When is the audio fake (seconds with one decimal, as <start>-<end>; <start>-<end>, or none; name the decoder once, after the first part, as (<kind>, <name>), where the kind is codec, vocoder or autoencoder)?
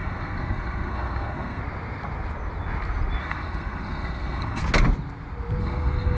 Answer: 0.0-1.6 (codec, SNAC); 3.2-4.6; 5.6-6.2